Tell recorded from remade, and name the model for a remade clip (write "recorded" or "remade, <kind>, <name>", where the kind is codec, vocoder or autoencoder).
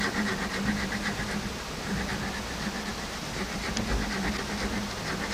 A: recorded